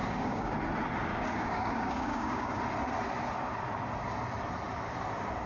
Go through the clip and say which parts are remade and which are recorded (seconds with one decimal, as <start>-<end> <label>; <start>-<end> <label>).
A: 0.0-0.5 remade; 0.5-1.1 recorded; 1.1-2.6 remade; 2.6-5.5 recorded